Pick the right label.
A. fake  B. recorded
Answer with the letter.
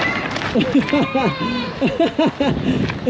B